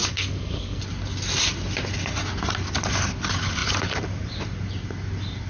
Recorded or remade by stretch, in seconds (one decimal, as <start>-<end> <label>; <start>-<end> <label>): 0.0-0.8 remade; 0.8-5.5 recorded